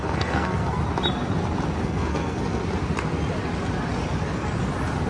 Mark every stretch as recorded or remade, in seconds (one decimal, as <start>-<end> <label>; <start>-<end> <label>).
0.0-0.8 remade; 0.8-1.8 recorded; 1.8-2.6 remade; 2.6-5.1 recorded